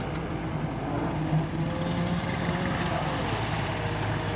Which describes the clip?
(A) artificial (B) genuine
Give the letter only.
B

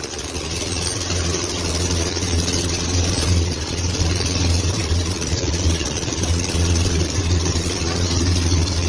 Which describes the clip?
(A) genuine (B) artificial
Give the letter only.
B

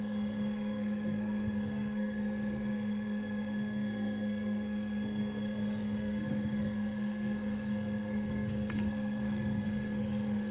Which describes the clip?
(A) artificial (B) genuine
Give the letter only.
A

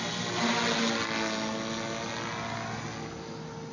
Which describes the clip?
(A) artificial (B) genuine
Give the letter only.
B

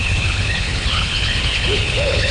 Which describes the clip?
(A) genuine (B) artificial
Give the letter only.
B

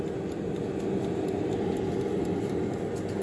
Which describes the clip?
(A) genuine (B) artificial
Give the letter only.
A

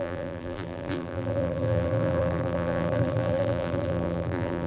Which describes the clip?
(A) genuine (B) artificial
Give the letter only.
B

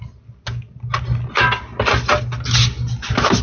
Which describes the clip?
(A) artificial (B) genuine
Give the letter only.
B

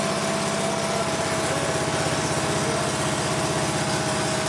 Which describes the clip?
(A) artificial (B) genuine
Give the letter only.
B